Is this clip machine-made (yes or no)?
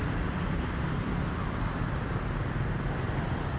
yes